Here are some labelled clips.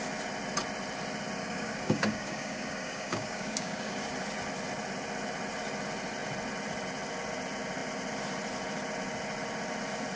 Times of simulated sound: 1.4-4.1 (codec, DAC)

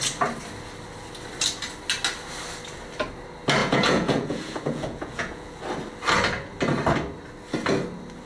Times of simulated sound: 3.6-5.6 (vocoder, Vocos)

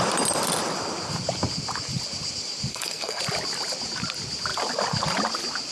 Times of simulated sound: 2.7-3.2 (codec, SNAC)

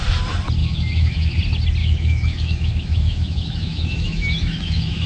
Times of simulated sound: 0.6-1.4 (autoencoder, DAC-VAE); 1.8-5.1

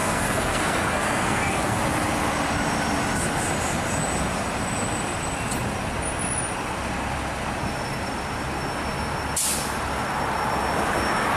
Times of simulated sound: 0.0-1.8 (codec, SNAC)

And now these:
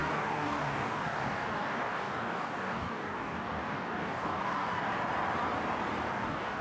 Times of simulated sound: 0.0-5.0 (codec, DAC); 6.0-6.6